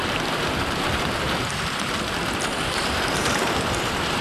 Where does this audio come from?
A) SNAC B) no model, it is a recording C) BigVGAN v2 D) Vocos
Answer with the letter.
C